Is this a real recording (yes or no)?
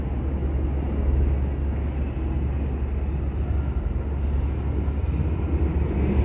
yes